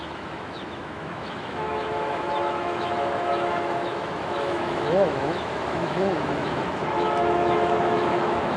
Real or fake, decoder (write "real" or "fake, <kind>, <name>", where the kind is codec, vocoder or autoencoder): fake, autoencoder, DAC-VAE